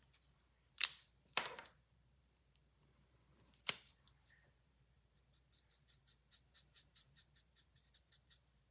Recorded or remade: remade